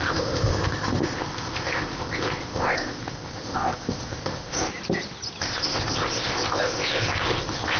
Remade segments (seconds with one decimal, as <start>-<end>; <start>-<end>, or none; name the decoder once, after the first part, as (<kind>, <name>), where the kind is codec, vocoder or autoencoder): 0.0-4.7 (codec, ZipCodec); 5.4-7.8